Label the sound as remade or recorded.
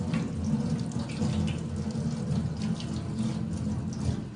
recorded